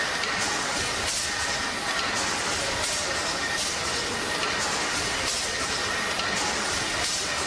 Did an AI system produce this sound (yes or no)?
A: no